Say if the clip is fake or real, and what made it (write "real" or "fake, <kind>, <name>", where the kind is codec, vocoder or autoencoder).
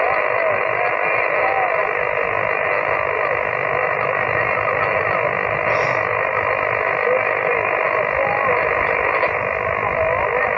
real